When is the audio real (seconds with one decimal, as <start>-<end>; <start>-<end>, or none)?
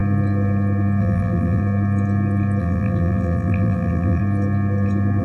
0.0-1.0; 1.6-2.6; 4.2-5.2